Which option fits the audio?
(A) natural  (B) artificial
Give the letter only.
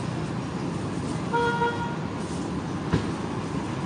A